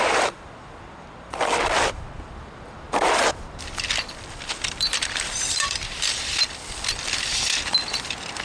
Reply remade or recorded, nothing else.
remade